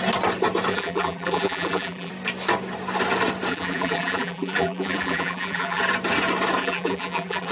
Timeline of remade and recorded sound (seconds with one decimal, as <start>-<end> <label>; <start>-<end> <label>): 0.0-0.7 recorded; 0.7-2.1 remade; 2.1-3.5 recorded; 3.5-5.8 remade; 5.8-6.6 recorded; 6.6-7.5 remade